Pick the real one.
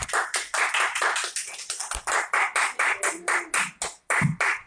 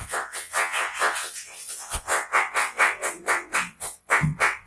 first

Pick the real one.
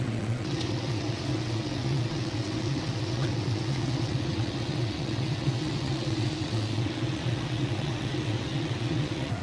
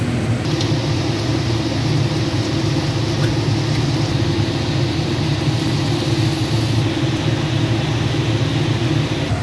second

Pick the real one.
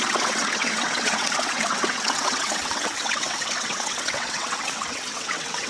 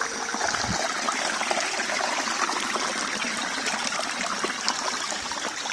second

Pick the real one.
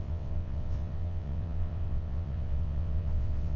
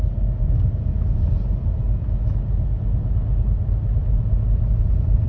second